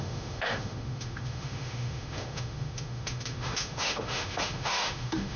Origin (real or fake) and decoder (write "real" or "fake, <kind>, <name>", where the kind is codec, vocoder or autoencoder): fake, autoencoder, DAC-VAE